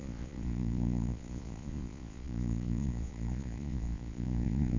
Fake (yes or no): yes